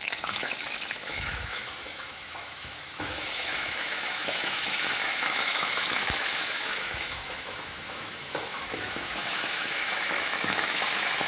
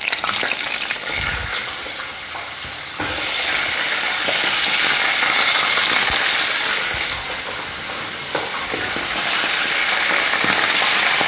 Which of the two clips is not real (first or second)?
first